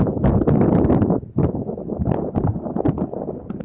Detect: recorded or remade recorded